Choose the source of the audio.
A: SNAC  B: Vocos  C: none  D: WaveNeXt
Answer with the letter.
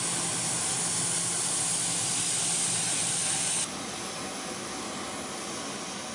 C